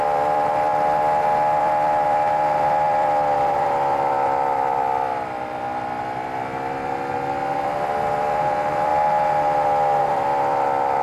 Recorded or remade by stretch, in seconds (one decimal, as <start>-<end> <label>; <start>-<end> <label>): 0.0-0.7 remade; 0.7-1.6 recorded; 1.6-8.9 remade; 8.9-10.0 recorded; 10.0-11.0 remade